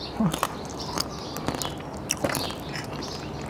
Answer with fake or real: real